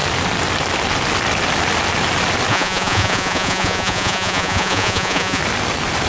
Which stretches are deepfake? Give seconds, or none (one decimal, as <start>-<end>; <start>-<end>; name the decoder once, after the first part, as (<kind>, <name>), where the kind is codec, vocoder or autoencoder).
2.5-5.4 (vocoder, Vocos)